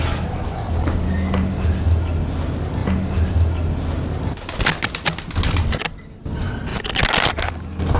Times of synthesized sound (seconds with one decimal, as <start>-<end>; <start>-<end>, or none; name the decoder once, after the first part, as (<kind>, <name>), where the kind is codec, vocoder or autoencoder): none